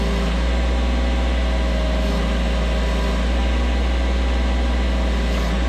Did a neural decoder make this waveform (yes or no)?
no